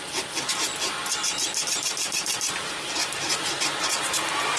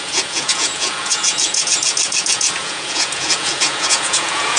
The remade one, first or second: second